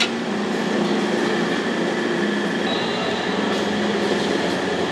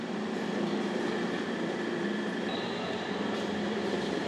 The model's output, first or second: second